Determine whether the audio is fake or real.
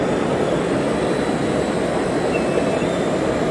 real